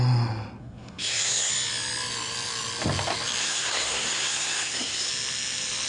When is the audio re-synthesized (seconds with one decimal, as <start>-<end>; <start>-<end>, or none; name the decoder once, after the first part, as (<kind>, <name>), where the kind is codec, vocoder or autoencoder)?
0.6-1.5 (codec, SNAC); 3.4-5.1